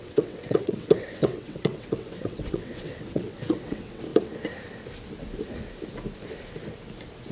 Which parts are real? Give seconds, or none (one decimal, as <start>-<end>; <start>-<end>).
4.1-7.3